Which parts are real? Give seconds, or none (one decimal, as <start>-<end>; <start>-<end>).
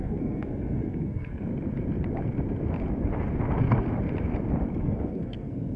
1.5-4.8